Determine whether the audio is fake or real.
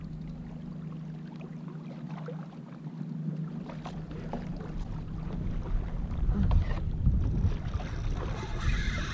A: real